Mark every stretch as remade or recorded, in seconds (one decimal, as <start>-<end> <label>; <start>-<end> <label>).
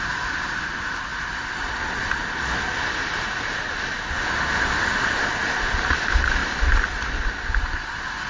0.0-8.3 recorded